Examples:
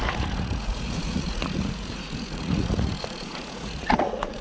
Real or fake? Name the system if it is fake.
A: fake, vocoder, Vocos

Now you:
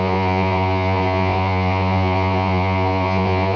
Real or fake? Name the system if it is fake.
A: fake, vocoder, Vocos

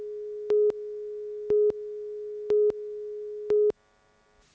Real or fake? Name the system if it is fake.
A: real